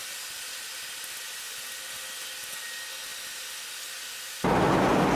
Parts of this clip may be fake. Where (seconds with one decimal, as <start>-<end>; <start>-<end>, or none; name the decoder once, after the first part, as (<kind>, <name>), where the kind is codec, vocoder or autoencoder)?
none